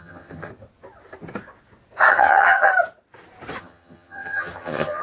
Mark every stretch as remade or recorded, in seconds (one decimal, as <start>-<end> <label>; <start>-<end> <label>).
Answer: 0.0-0.5 remade; 0.5-2.1 recorded; 2.1-2.7 remade; 2.7-3.6 recorded; 3.6-5.0 remade